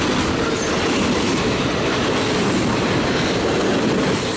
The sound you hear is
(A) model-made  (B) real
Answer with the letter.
B